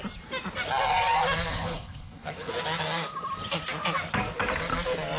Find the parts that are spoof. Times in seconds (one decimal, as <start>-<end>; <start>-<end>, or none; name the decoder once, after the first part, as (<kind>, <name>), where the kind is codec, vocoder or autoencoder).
1.5-2.5 (codec, HILCodec)